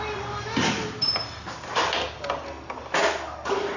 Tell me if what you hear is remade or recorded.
recorded